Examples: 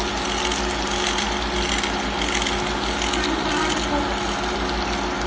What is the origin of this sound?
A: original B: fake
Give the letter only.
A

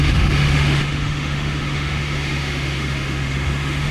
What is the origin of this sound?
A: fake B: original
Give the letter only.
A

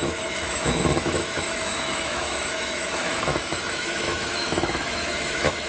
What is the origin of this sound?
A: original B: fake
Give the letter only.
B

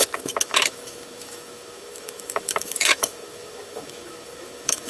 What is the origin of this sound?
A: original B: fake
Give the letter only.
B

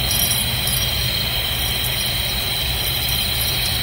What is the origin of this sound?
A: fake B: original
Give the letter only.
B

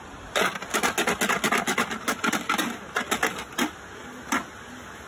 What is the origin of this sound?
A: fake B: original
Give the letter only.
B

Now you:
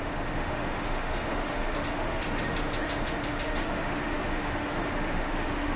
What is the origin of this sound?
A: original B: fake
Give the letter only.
B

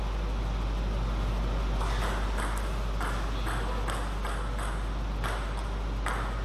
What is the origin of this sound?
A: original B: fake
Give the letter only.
A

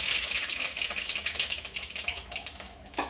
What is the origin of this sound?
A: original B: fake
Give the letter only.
B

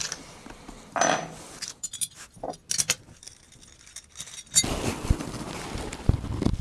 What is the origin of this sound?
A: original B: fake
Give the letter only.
A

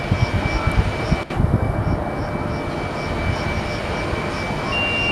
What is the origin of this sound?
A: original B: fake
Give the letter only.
A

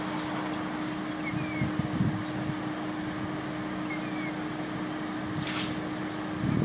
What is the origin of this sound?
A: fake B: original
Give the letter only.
B